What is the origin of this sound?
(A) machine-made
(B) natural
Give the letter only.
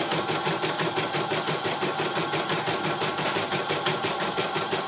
A